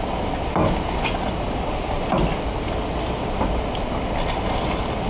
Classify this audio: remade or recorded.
recorded